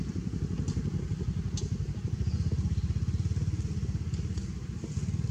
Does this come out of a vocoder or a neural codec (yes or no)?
no